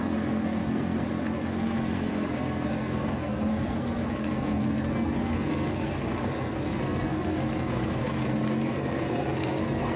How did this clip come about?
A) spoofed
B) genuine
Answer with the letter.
A